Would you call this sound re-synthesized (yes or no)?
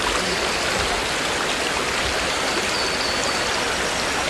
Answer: no